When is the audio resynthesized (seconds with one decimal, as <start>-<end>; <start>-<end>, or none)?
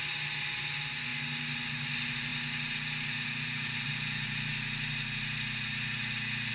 none